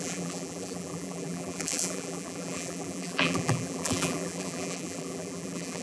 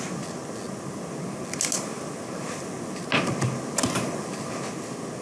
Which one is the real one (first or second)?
second